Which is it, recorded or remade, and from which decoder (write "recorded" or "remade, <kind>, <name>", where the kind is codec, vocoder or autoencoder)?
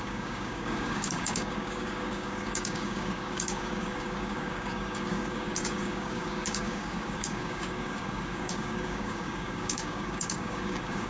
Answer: remade, codec, DAC